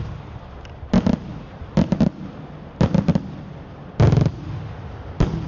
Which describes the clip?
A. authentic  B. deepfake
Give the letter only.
A